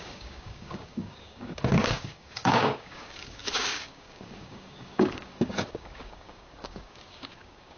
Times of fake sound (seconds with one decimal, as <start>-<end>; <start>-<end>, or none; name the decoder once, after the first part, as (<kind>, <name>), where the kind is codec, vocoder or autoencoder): 0.0-7.8 (codec, DAC)